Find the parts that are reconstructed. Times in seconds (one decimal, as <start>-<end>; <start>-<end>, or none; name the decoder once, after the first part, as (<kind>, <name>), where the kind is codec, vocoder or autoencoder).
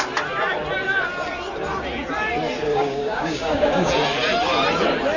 2.7-3.9 (codec, DAC)